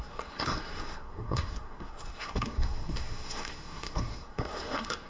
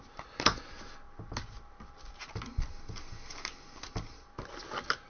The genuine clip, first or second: second